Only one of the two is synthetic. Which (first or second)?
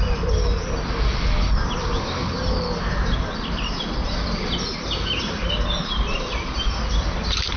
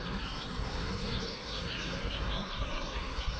second